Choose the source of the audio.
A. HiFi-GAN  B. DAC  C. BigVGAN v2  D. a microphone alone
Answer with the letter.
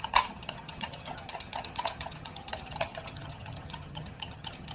A